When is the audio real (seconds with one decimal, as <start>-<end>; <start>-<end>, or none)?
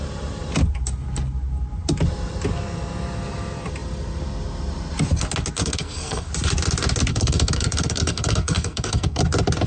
0.0-5.6; 6.3-7.1; 9.2-9.7